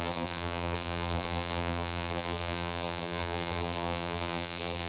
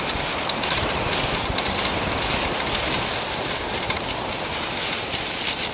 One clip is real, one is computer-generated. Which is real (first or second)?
second